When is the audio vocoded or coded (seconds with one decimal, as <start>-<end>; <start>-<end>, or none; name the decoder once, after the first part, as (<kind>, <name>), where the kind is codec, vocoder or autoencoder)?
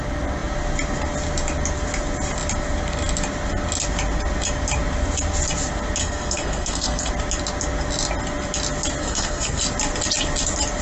6.0-7.1 (codec, SNAC); 9.0-9.6